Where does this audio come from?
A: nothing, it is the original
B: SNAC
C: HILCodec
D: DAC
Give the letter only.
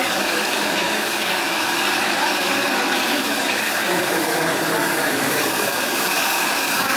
D